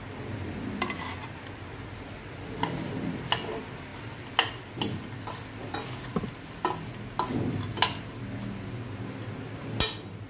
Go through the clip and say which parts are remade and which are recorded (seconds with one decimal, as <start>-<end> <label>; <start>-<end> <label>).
0.0-10.3 recorded